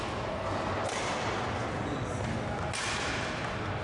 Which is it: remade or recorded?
recorded